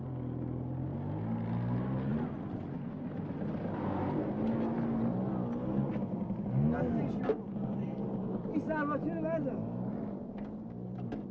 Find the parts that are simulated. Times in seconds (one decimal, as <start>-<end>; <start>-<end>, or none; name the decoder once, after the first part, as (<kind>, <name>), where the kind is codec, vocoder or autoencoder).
none

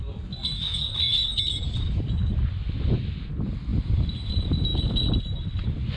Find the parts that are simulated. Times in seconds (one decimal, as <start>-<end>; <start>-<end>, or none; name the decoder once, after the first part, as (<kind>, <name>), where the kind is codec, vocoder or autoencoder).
none